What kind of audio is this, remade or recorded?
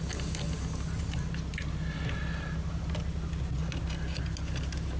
recorded